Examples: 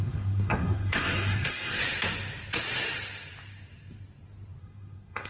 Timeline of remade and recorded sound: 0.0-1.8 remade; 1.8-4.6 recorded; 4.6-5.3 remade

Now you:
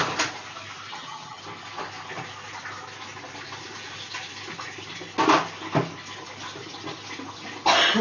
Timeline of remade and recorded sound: 0.0-0.9 recorded; 0.9-1.4 remade; 1.4-8.0 recorded

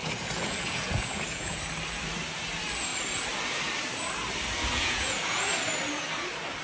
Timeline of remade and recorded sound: 0.0-1.6 remade; 1.6-4.6 recorded; 4.6-5.5 remade; 5.5-6.6 recorded

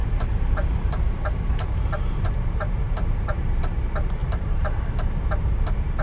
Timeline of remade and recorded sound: 0.0-3.6 remade; 3.6-4.2 recorded; 4.2-4.8 remade; 4.8-6.0 recorded

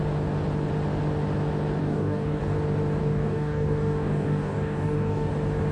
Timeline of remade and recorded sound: 0.0-1.8 recorded; 1.8-2.4 remade; 2.4-3.0 recorded; 3.0-5.3 remade; 5.3-5.7 recorded